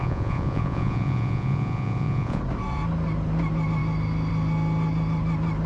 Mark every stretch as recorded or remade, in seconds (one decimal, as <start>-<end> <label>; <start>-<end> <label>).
0.0-2.4 remade; 2.4-5.7 recorded